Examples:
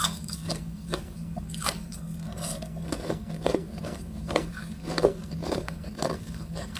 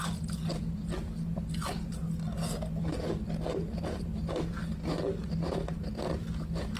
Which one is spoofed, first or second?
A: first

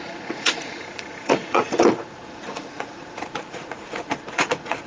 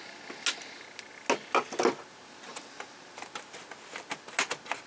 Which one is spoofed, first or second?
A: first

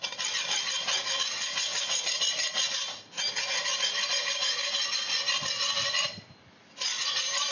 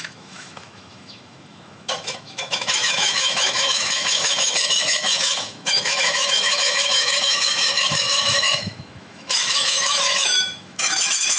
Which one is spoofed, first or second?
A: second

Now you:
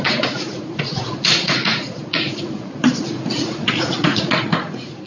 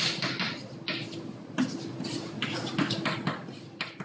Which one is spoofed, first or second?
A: first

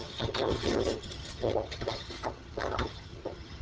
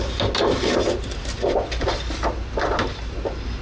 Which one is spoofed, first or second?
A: first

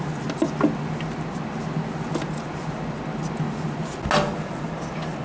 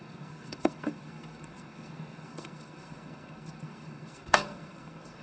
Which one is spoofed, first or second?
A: second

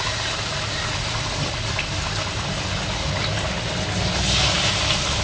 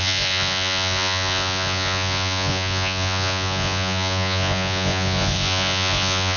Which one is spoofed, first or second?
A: second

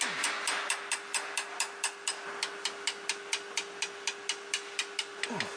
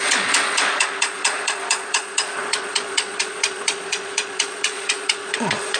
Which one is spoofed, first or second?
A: second